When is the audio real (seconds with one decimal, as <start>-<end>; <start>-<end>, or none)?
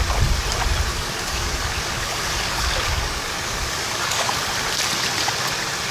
0.0-0.9; 4.4-5.9